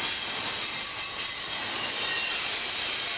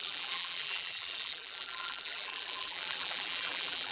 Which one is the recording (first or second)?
first